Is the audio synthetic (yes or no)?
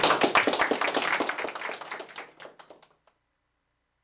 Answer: no